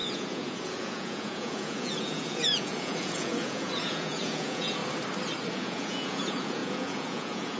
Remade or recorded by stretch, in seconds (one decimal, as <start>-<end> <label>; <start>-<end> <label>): 0.0-4.8 remade; 4.8-5.5 recorded; 5.5-7.6 remade